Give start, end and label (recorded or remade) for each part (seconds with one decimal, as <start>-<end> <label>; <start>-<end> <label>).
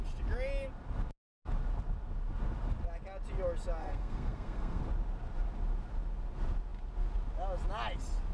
0.0-3.8 recorded; 3.8-4.8 remade; 4.8-8.3 recorded